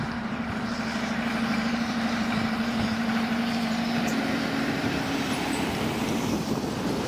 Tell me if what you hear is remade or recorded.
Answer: remade